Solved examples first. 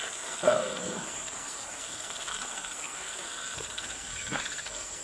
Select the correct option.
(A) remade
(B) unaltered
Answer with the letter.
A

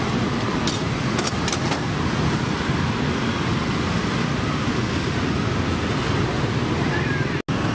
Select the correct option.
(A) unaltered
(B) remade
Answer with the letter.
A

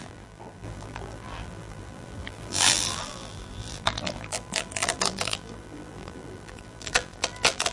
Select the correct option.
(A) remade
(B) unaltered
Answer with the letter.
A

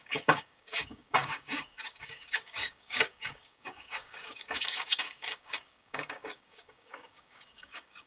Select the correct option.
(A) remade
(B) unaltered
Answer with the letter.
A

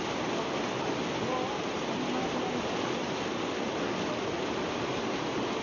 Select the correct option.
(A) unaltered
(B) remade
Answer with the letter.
A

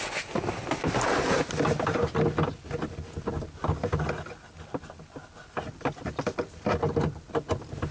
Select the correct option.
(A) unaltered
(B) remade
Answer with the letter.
A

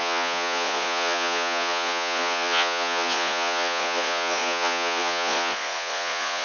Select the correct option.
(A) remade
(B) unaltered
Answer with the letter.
A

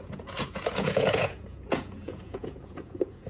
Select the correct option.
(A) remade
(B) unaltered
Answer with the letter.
A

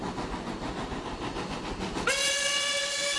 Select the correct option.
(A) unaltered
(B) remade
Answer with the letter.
A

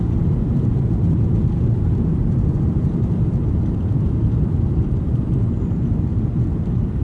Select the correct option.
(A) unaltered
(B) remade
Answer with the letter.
B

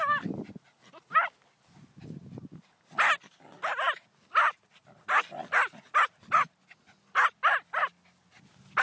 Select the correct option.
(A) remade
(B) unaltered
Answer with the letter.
B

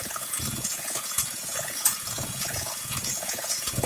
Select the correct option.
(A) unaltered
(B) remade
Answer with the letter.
B